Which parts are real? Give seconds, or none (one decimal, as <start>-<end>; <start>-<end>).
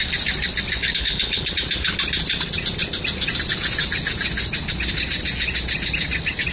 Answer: 0.0-0.8; 1.5-6.5